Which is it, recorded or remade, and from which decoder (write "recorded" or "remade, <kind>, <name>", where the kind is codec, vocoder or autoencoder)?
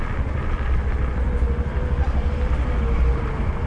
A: recorded